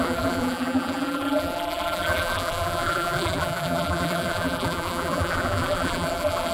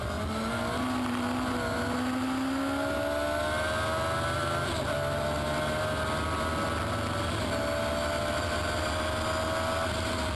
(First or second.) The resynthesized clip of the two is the first